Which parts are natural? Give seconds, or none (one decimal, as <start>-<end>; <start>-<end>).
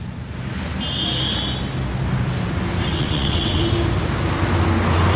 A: 0.0-2.9; 3.6-5.2